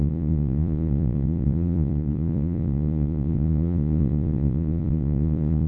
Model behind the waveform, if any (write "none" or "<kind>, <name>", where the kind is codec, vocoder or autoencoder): vocoder, Vocos